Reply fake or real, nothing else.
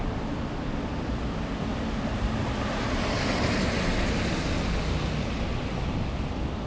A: real